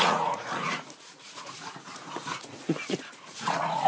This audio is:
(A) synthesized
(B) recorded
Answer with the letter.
A